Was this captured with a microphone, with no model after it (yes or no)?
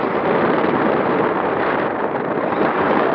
yes